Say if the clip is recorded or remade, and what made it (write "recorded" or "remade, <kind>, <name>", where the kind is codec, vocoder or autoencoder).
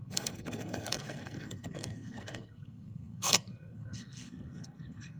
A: remade, codec, SNAC